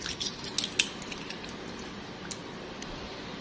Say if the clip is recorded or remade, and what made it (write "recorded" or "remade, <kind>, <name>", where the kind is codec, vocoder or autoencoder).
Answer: recorded